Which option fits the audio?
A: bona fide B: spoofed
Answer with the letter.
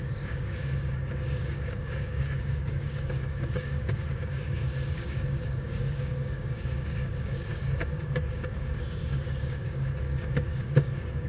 B